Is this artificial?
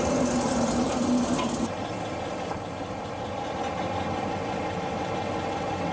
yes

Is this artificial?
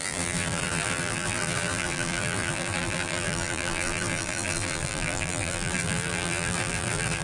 yes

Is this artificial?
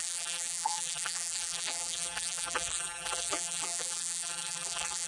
yes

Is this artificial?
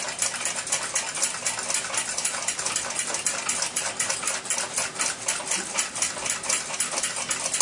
no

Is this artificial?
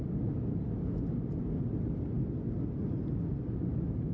no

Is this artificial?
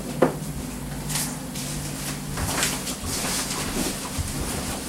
yes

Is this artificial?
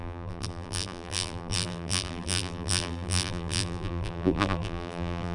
yes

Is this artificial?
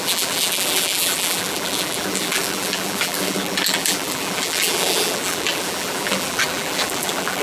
yes